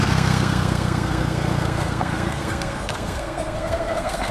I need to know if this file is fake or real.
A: fake